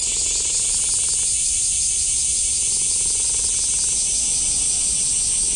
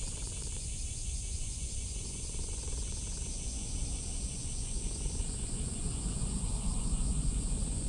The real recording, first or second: first